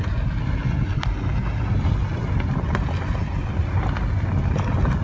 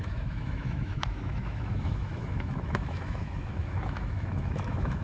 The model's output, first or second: second